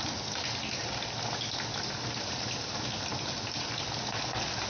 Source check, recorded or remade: recorded